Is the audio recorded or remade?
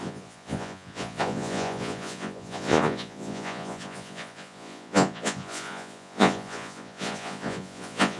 remade